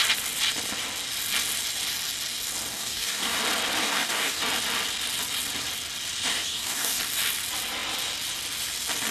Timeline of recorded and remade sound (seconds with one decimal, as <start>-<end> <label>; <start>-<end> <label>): 0.0-2.7 recorded; 2.7-3.4 remade; 3.4-3.8 recorded; 3.8-4.4 remade; 4.4-6.3 recorded; 6.3-7.0 remade; 7.0-9.1 recorded